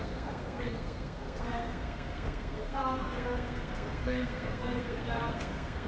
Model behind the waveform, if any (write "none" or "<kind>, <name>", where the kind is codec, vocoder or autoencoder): codec, SNAC